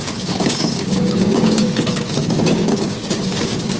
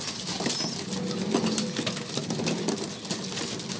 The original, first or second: second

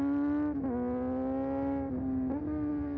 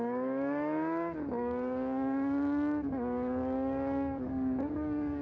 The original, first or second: first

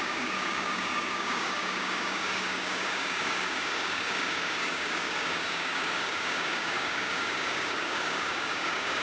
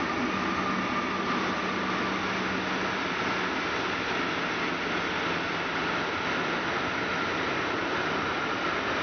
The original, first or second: second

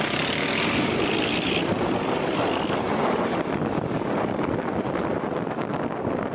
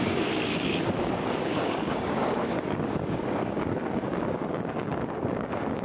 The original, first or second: first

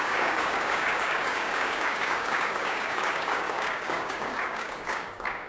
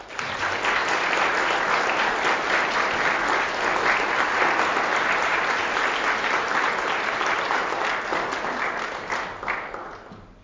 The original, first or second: second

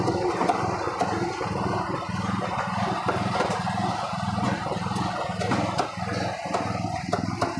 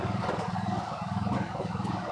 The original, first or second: first